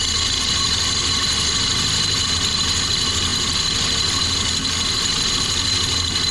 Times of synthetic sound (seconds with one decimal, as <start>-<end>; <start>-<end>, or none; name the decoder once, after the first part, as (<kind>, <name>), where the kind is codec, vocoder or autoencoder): none